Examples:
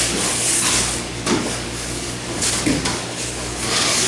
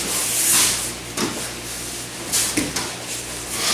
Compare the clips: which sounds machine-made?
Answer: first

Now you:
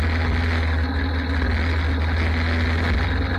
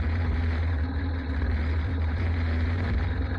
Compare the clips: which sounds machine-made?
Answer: second